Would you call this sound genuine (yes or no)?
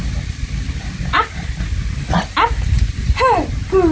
yes